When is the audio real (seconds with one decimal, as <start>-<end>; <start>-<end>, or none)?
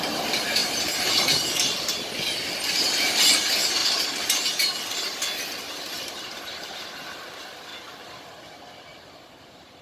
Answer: 3.8-4.8; 7.7-9.4